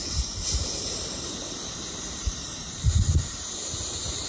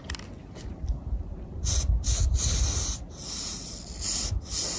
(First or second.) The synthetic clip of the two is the first